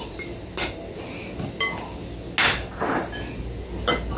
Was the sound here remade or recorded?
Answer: recorded